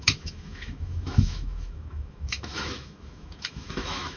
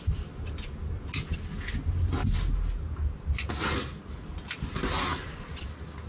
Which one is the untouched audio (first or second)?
second